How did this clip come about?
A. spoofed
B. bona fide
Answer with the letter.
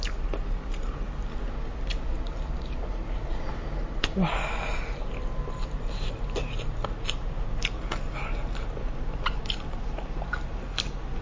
B